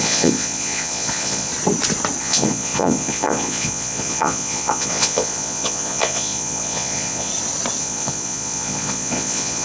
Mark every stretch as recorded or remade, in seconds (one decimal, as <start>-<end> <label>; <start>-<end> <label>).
0.0-1.5 remade; 1.5-2.2 recorded; 2.2-7.3 remade; 7.3-7.8 recorded; 7.8-9.6 remade